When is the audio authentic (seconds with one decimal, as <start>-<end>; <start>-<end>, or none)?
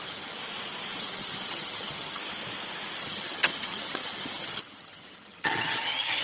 0.4-1.0; 2.2-3.0